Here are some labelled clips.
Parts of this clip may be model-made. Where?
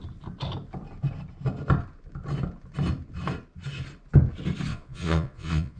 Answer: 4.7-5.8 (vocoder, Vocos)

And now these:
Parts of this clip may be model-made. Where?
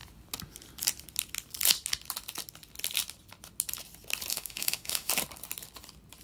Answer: 4.3-5.1 (autoencoder, DAC-VAE)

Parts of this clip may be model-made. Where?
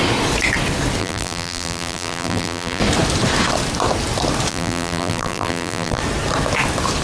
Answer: 1.0-2.8 (vocoder, BigVGAN v2); 4.5-6.0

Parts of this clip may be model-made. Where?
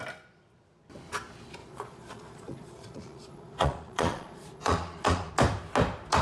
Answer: 1.6-5.3 (vocoder, Vocos)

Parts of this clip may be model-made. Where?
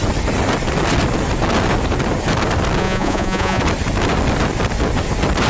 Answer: 2.8-3.6 (vocoder, Vocos)